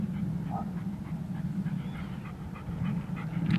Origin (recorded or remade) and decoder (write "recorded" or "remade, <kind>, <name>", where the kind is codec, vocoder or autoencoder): recorded